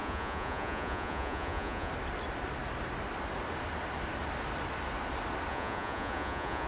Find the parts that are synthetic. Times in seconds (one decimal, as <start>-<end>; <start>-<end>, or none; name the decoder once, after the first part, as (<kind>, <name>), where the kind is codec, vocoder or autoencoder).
0.0-1.9 (vocoder, Vocos); 5.5-6.7